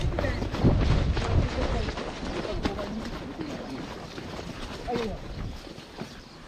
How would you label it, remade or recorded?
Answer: recorded